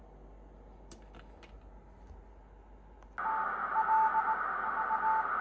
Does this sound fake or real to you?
real